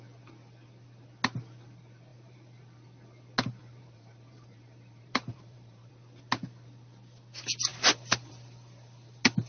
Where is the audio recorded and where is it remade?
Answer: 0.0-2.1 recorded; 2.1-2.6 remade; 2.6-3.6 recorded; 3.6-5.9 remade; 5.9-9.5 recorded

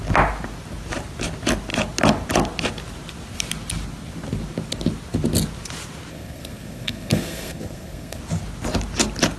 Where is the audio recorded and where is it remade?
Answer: 0.0-6.1 recorded; 6.1-8.2 remade; 8.2-9.4 recorded